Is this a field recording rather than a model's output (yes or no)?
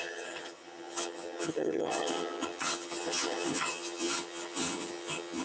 no